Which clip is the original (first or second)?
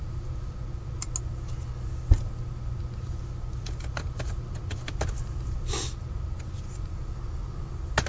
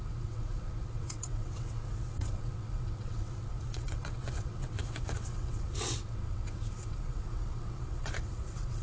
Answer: first